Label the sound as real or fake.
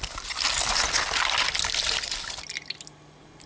real